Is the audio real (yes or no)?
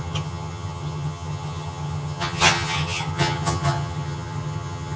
no